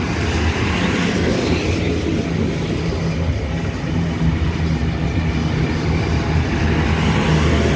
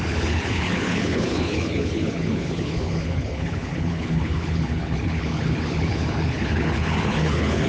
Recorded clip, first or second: first